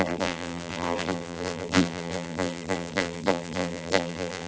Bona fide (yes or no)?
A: no